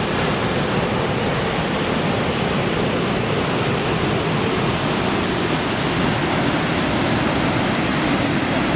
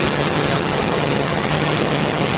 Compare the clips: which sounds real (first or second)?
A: first